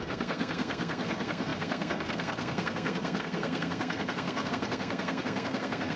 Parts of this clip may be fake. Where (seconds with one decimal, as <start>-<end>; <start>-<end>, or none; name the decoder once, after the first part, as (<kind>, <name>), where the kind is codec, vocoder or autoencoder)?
0.0-6.0 (codec, SNAC)